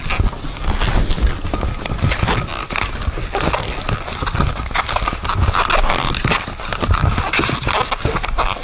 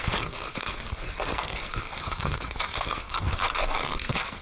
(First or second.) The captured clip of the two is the first